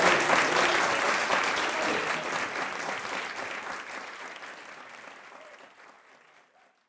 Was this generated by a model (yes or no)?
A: no